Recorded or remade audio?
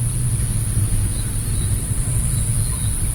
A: recorded